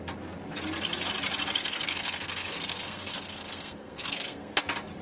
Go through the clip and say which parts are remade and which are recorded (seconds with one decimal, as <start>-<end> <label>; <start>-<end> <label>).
0.0-1.6 recorded; 1.6-4.6 remade; 4.6-5.0 recorded